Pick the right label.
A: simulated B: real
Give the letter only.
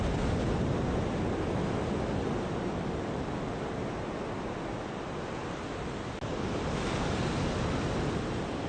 B